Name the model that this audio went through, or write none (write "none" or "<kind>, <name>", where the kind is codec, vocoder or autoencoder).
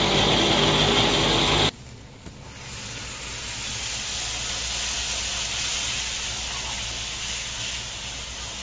none